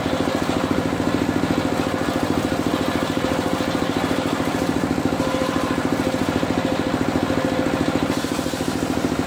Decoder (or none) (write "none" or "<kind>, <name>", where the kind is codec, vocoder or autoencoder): none